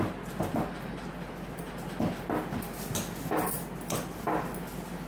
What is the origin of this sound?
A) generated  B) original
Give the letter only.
B